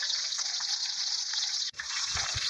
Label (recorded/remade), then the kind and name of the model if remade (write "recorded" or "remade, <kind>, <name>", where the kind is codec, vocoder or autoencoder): remade, vocoder, Vocos